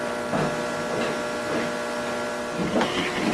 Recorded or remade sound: recorded